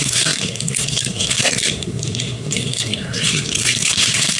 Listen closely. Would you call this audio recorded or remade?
remade